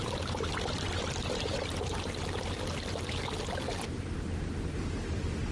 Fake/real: real